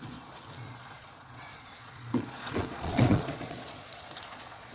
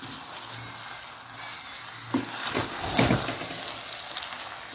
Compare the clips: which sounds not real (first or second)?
first